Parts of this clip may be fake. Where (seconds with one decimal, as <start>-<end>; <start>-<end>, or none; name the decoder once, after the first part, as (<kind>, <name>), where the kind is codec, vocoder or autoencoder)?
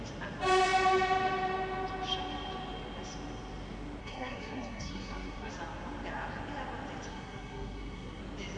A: 4.0-5.5 (codec, SNAC); 7.1-8.2